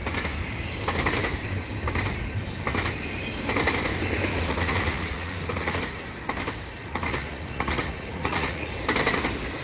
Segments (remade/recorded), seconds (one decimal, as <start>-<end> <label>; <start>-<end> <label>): 0.0-4.3 recorded; 4.3-5.8 remade; 5.8-6.8 recorded; 6.8-8.7 remade; 8.7-9.6 recorded